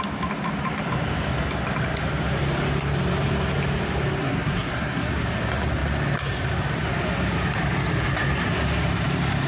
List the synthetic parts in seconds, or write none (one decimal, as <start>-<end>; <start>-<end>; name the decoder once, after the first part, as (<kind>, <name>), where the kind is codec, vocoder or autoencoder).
4.2-5.1 (codec, SNAC)